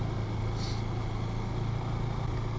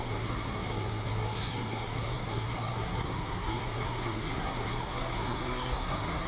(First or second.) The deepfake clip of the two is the second